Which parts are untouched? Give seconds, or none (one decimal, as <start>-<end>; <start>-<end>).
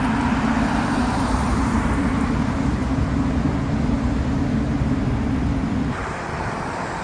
0.0-1.0; 2.0-7.0